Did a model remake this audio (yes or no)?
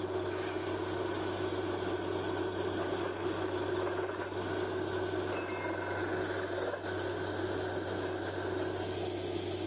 no